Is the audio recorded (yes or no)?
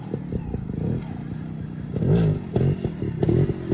yes